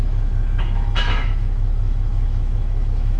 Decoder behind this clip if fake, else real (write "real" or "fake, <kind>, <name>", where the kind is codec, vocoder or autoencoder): fake, autoencoder, DAC-VAE